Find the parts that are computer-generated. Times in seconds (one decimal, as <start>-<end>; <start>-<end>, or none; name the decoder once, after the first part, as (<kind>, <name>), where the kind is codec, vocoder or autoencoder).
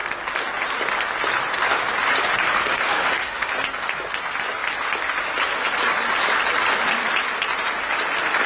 2.6-3.5 (autoencoder, DAC-VAE)